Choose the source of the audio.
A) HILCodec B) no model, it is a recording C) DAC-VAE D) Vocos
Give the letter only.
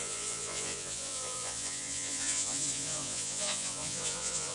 D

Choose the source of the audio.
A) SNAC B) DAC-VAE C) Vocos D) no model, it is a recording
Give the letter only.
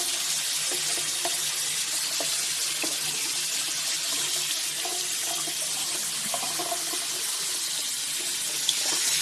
D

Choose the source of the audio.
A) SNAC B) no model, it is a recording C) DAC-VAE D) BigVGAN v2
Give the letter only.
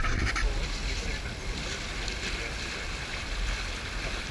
D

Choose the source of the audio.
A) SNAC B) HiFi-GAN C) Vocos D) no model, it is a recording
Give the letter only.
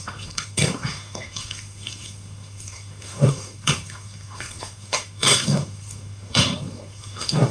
A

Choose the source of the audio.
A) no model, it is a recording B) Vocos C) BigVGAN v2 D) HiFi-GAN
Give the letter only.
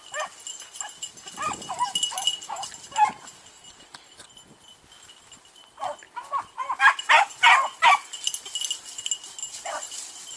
A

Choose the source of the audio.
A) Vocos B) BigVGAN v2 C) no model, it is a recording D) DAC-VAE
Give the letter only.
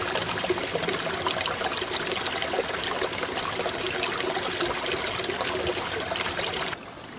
C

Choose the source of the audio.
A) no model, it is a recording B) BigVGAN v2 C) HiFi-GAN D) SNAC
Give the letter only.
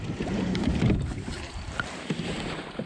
B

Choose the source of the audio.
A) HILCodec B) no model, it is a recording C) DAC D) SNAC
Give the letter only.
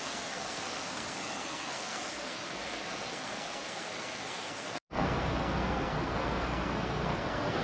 D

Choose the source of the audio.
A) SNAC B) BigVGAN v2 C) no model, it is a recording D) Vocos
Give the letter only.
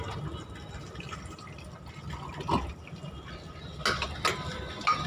C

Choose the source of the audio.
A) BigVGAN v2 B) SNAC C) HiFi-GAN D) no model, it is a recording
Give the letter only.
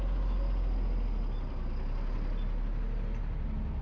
D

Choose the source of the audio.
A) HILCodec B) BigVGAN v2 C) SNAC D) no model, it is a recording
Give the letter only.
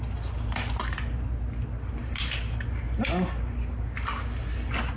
D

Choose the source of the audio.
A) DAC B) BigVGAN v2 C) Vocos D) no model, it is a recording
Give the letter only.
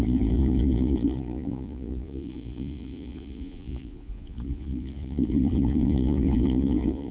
C